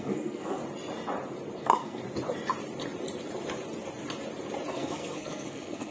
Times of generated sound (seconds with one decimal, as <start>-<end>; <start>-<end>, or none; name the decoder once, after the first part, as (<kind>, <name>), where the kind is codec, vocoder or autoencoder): 0.0-0.6 (codec, SNAC); 1.6-2.0; 4.7-5.9